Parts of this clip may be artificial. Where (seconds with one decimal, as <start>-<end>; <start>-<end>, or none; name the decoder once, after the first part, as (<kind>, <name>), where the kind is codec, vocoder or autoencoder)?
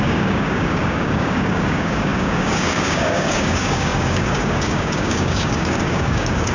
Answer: 0.0-6.5 (codec, DAC)